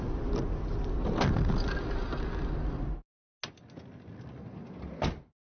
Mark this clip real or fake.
real